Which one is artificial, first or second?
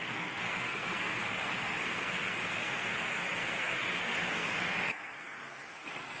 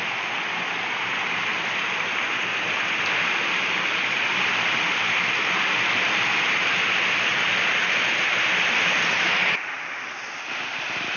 first